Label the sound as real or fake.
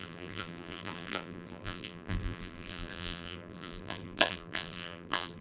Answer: fake